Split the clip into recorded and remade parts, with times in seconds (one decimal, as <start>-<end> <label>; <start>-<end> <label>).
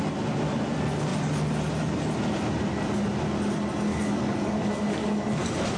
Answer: 0.0-3.9 recorded; 3.9-5.3 remade; 5.3-5.8 recorded